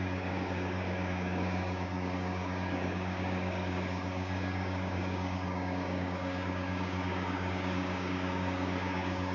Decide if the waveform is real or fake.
fake